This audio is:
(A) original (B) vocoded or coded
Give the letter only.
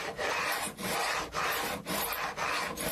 B